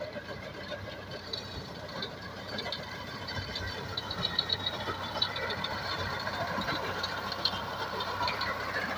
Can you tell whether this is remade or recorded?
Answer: remade